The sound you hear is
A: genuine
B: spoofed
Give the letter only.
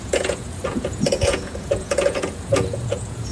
B